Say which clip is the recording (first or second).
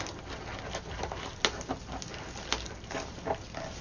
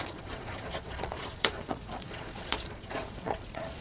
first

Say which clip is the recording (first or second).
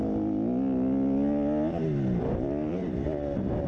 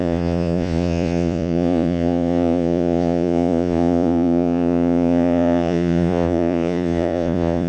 first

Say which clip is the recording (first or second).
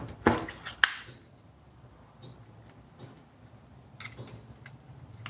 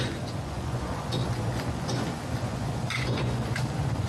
first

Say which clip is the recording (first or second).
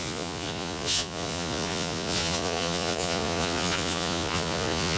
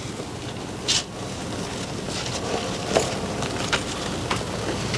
second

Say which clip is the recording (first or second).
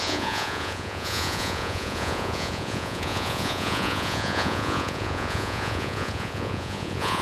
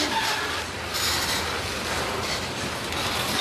second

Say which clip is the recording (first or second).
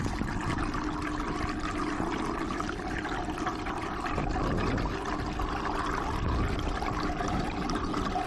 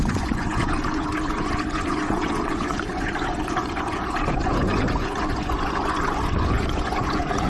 first